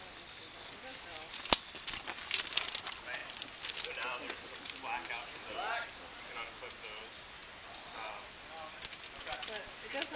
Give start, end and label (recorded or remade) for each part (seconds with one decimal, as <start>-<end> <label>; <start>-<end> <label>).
0.0-10.2 recorded